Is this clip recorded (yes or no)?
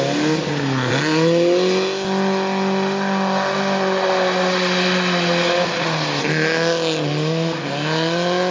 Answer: yes